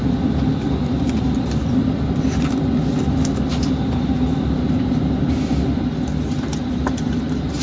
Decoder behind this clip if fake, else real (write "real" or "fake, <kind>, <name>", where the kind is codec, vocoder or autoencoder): real